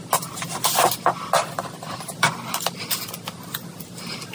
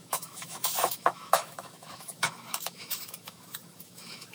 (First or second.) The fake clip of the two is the second